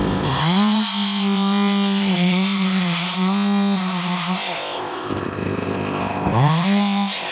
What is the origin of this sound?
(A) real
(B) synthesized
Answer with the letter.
B